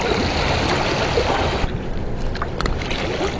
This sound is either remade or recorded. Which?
recorded